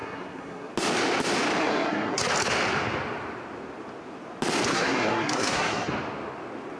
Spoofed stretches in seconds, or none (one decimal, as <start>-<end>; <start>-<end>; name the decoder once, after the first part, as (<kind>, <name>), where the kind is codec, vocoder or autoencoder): 0.0-0.7 (codec, SNAC); 1.6-2.2; 4.7-5.9